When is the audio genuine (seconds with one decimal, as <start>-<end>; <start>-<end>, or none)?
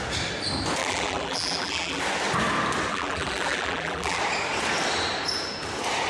0.0-0.8; 2.0-2.9; 4.2-6.1